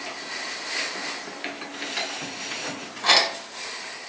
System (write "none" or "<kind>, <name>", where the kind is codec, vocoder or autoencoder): none